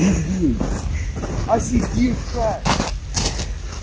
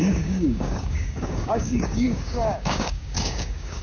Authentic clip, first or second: first